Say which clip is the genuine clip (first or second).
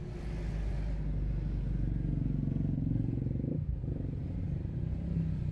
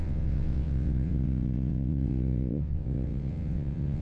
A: first